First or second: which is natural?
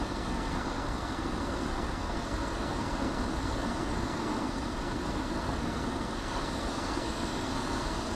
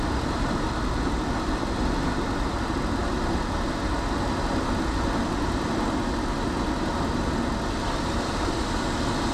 second